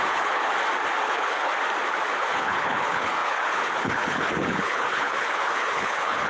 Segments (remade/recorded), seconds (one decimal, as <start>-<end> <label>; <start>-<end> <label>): 0.0-0.5 remade; 0.5-1.0 recorded; 1.0-1.5 remade; 1.5-2.2 recorded; 2.2-6.3 remade